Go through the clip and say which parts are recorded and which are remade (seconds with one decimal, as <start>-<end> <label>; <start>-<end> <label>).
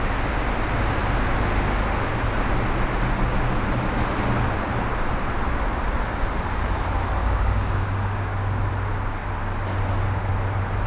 0.0-7.2 recorded; 7.2-8.7 remade; 8.7-10.9 recorded